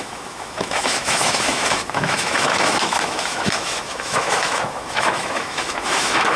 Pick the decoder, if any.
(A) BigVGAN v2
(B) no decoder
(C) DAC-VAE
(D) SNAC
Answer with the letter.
C